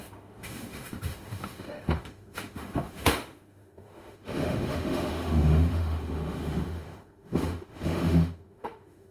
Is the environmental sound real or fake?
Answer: fake